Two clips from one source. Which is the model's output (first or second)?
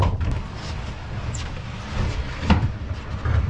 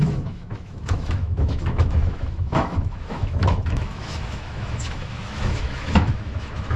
second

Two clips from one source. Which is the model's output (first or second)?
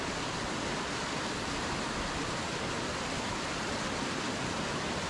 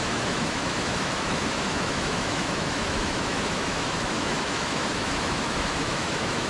second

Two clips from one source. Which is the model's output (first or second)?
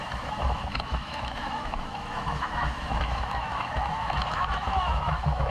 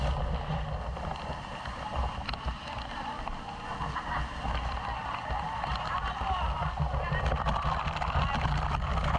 first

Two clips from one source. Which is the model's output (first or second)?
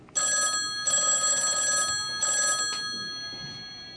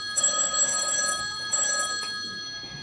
second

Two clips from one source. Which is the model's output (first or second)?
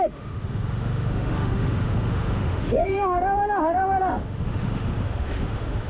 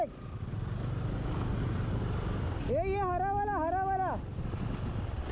first